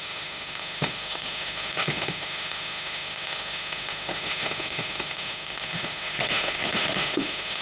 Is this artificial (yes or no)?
yes